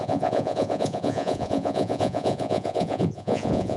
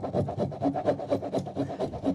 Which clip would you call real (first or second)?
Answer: second